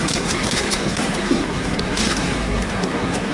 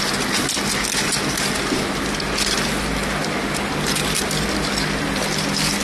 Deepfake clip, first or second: first